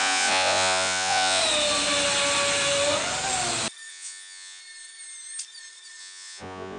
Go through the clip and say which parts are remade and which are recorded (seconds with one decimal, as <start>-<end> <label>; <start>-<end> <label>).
0.0-1.4 remade; 1.4-3.9 recorded; 3.9-4.6 remade; 4.6-6.0 recorded; 6.0-6.8 remade